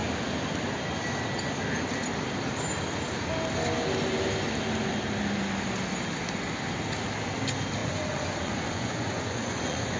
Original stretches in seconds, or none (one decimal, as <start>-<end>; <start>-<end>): 0.0-7.8

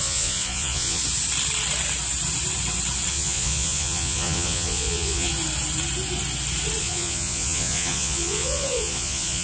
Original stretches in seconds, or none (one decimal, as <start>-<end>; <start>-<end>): 1.0-3.1; 5.3-6.8

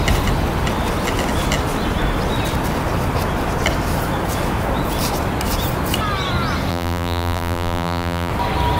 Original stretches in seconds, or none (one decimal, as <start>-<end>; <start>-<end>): 0.0-6.7; 8.3-8.8